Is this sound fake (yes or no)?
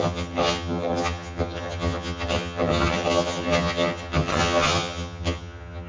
yes